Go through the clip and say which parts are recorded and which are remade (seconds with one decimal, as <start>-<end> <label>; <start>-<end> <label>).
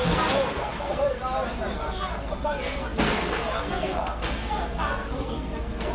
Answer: 0.0-1.2 remade; 1.2-1.7 recorded; 1.7-5.9 remade